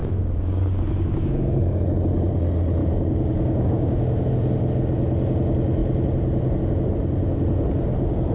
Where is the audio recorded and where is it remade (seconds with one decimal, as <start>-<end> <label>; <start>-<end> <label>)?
0.0-1.8 remade; 1.8-2.8 recorded; 2.8-4.3 remade; 4.3-8.3 recorded